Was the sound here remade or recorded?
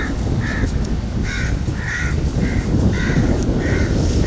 remade